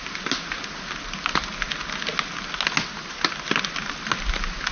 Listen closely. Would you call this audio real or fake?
real